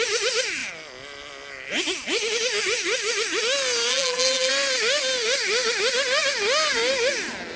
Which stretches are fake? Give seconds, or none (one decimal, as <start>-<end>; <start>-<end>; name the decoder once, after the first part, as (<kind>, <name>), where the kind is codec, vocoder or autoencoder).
3.9-4.5 (vocoder, BigVGAN v2)